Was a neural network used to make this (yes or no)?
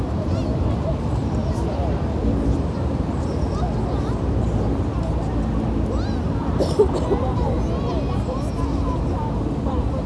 no